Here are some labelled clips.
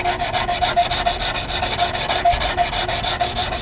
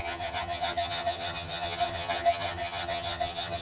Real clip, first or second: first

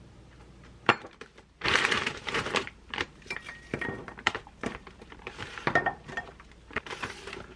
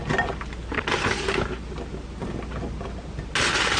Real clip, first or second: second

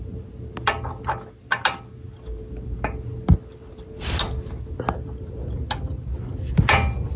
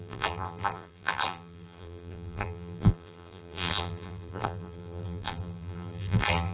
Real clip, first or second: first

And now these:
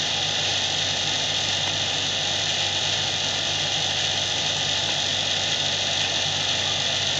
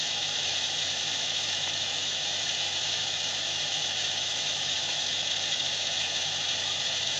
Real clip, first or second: first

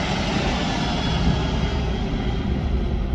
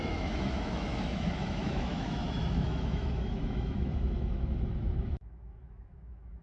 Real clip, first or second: first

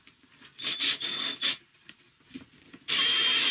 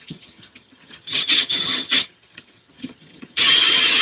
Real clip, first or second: first